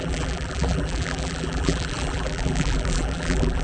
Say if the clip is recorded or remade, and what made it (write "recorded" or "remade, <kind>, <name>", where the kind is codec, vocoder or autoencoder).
remade, vocoder, BigVGAN v2